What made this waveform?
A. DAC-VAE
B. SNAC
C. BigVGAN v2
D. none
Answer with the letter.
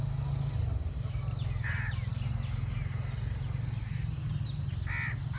D